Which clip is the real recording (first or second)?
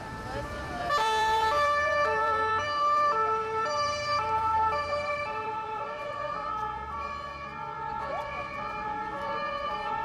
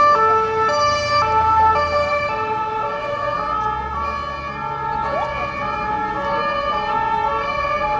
second